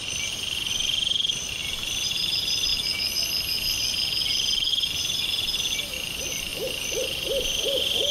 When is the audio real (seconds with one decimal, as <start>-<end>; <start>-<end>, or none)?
2.7-4.7; 6.5-7.0